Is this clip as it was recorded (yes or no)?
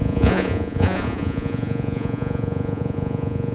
no